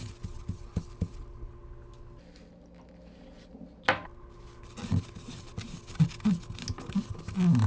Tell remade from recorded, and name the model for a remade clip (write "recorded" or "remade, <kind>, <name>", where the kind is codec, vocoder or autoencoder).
recorded